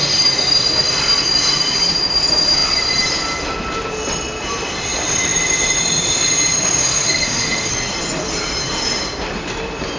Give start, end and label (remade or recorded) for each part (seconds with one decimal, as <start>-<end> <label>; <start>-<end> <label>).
0.0-6.8 recorded; 6.8-7.7 remade; 7.7-10.0 recorded